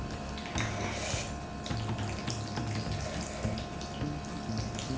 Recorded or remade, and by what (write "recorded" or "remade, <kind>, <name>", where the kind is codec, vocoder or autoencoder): recorded